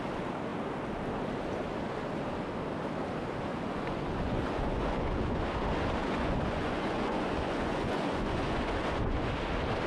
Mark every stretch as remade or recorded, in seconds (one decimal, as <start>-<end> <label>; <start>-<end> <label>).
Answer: 0.0-3.5 recorded; 3.5-5.4 remade; 5.4-6.0 recorded; 6.0-9.3 remade; 9.3-9.9 recorded